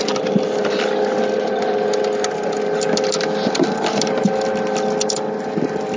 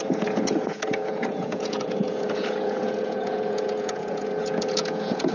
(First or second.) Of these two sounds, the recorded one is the first